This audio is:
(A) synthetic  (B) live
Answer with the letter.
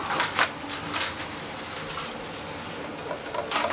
B